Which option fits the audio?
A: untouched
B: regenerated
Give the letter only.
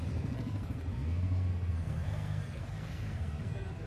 B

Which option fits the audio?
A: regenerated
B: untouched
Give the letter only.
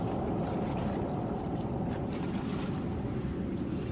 A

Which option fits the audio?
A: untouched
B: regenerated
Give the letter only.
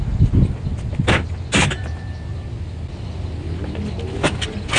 A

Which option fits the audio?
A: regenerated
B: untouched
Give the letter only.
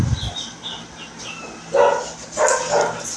B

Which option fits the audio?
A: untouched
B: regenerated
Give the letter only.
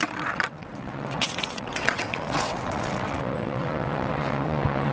B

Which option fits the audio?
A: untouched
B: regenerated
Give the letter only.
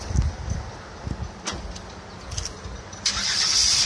A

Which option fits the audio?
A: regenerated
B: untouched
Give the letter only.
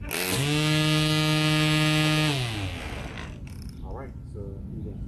B